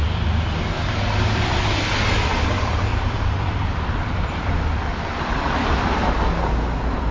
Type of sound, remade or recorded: remade